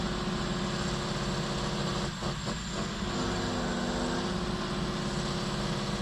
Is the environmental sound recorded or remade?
recorded